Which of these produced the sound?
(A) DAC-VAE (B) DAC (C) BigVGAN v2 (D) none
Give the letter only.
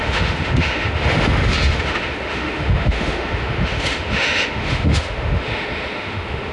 A